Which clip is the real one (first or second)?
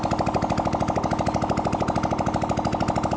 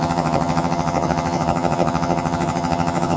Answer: first